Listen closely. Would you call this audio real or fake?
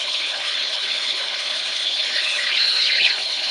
fake